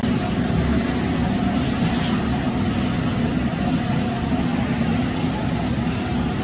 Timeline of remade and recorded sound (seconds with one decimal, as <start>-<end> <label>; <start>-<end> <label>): 0.0-6.4 recorded